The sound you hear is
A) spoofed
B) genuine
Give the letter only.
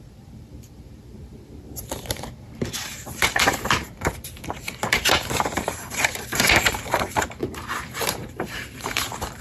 A